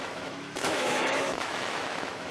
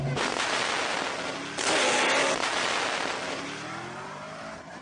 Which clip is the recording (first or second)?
second